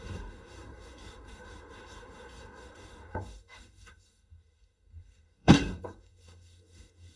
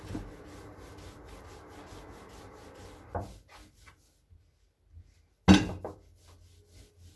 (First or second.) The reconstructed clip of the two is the first